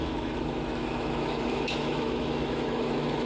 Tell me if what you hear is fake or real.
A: fake